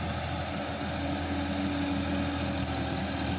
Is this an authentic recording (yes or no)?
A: yes